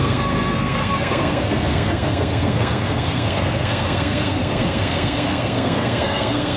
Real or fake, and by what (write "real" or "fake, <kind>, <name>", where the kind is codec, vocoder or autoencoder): fake, codec, SNAC